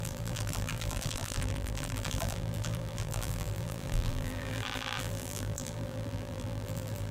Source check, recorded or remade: remade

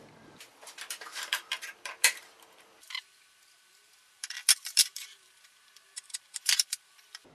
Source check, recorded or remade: remade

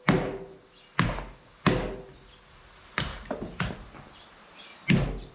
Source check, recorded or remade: recorded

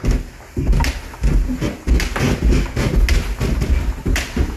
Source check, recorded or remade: recorded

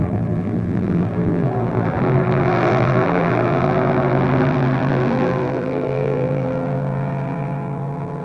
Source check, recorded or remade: remade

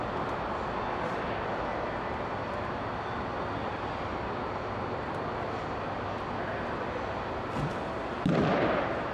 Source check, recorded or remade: recorded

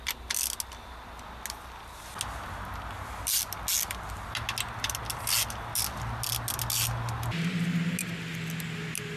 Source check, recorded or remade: recorded